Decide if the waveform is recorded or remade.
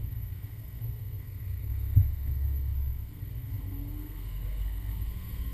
remade